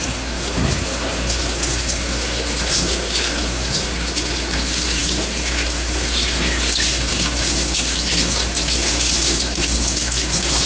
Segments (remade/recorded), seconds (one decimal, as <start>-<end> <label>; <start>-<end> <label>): 0.0-10.7 remade